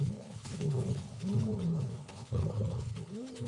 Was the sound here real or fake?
fake